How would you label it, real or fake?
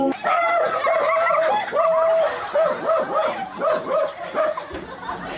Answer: real